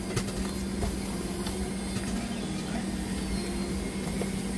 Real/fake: real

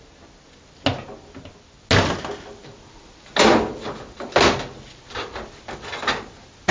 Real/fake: real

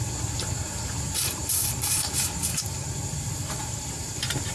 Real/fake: fake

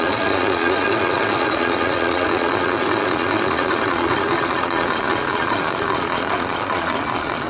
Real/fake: fake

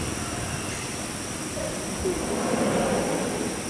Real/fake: real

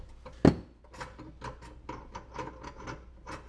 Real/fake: real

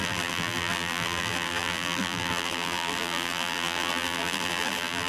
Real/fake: fake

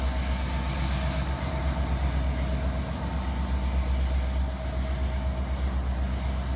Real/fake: real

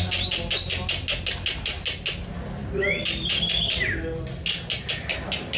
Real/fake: real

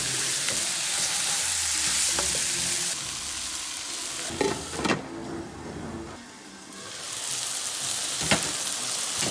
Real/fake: real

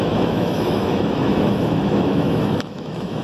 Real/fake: fake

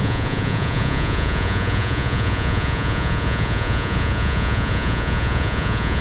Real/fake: fake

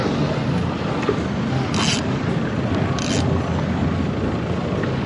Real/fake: real